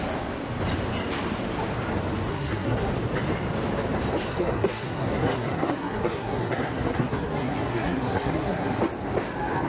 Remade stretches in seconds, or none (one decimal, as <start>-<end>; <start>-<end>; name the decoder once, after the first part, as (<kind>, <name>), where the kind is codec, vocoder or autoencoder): 2.3-2.9 (codec, SNAC); 4.3-8.8

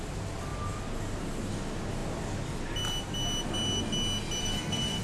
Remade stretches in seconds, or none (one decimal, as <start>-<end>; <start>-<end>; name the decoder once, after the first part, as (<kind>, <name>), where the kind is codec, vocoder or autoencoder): 4.4-5.0 (codec, SNAC)